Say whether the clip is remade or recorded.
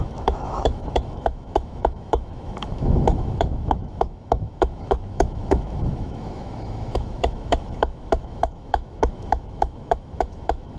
remade